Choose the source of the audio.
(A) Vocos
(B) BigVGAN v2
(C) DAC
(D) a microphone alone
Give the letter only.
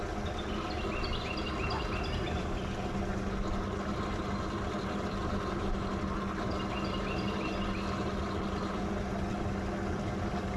D